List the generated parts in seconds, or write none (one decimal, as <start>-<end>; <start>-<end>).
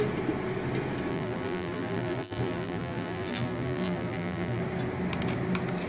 1.1-4.6